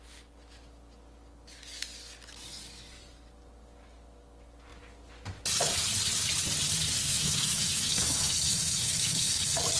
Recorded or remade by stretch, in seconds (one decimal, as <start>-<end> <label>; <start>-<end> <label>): 0.0-7.1 recorded; 7.1-9.4 remade; 9.4-9.8 recorded